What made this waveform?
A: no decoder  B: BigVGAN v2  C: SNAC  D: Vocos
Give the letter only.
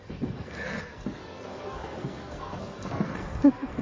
C